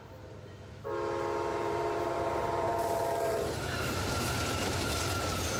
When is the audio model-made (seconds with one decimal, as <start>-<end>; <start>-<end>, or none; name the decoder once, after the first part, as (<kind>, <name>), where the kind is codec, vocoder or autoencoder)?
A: 1.5-4.9 (vocoder, BigVGAN v2)